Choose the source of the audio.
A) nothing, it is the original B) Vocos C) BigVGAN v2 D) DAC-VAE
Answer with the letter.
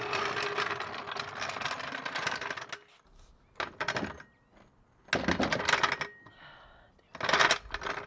A